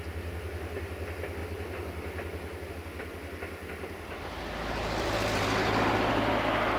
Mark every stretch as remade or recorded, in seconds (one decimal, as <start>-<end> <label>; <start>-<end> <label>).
0.0-6.8 recorded